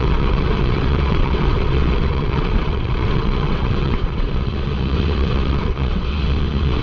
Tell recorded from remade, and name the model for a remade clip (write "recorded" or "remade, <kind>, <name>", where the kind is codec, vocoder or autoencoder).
remade, vocoder, WaveNeXt